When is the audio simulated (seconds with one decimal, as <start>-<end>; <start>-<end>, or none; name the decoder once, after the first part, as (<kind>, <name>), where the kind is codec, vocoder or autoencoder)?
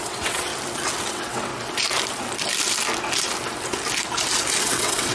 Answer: 0.0-0.5 (vocoder, WaveNeXt); 1.1-1.5; 4.6-5.1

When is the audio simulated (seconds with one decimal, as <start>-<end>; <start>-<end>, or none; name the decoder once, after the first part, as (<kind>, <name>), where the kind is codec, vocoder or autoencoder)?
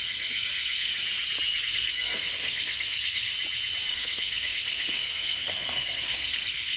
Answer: 0.0-0.9 (codec, SNAC); 1.6-3.3; 3.9-6.8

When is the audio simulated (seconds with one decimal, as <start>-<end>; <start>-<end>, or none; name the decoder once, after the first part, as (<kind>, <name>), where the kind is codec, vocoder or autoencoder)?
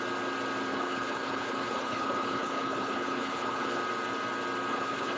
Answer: 0.7-3.8 (codec, HILCodec); 4.7-5.2